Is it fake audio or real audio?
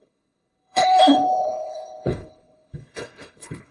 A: fake